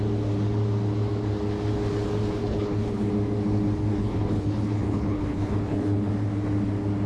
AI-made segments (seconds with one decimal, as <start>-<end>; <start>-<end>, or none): 2.4-3.1; 3.9-6.1